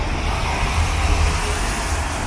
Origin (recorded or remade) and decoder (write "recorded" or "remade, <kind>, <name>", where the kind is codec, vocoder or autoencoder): recorded